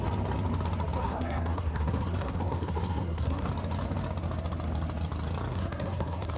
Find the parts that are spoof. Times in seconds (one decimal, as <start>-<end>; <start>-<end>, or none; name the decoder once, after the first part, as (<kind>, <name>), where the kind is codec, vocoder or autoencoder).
1.0-3.5 (codec, SNAC); 5.5-6.4